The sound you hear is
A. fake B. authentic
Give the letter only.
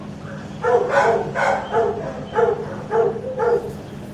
B